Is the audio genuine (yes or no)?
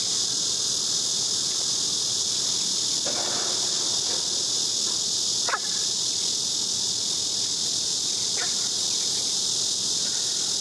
yes